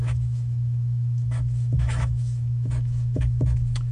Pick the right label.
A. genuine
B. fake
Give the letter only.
B